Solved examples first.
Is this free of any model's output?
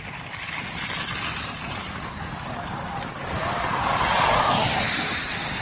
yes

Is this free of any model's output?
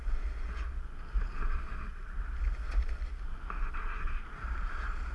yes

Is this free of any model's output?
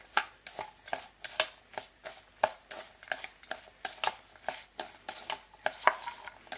yes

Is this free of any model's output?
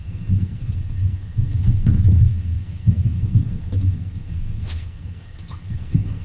no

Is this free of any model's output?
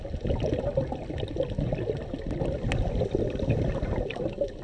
yes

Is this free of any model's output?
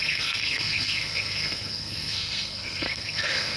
no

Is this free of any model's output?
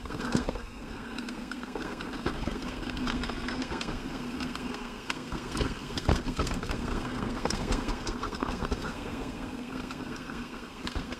no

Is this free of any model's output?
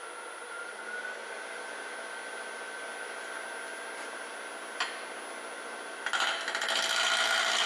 yes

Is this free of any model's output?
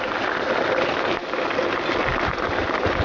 yes